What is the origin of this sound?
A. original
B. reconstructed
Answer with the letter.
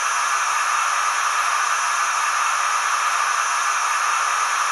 A